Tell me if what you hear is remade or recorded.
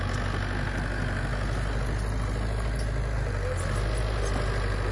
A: recorded